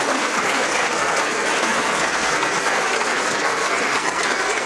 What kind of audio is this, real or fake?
fake